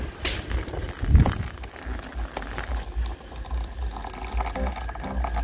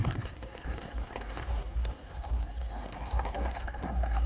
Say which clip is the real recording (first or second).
first